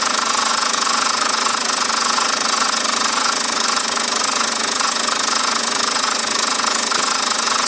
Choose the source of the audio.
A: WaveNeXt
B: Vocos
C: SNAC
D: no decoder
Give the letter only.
B